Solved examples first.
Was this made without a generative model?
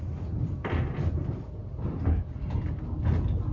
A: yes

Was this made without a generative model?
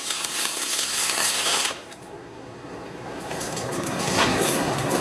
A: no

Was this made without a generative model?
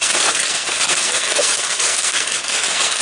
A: no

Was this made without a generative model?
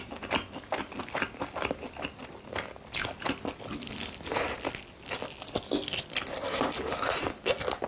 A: yes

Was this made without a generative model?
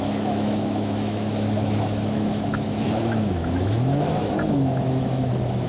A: no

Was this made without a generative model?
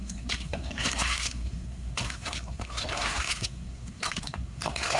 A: no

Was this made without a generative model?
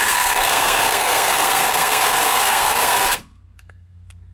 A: no